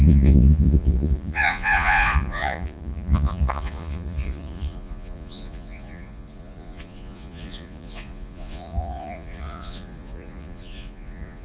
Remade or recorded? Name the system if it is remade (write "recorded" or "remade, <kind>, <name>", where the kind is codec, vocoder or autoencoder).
remade, vocoder, Vocos